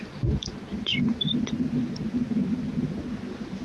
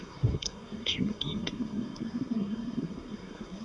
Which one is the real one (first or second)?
first